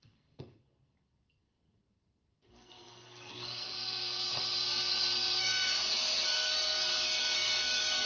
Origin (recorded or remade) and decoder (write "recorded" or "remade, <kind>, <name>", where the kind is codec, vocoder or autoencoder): remade, codec, SNAC